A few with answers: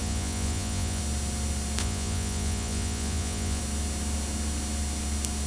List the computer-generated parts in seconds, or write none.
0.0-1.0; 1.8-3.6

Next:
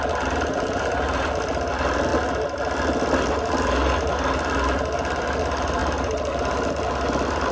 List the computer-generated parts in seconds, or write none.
none

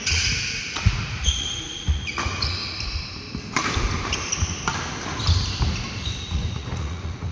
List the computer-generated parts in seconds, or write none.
0.0-2.6; 6.2-7.3

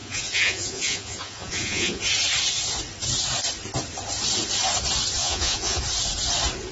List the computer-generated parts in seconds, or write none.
0.0-2.0; 5.2-5.8

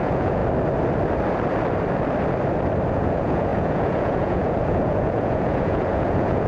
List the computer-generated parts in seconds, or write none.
0.0-0.4; 2.9-6.5

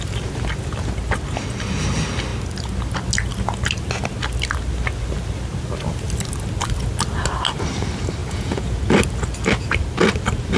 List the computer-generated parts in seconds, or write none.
8.2-8.8

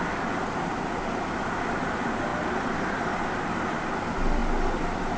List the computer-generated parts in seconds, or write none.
none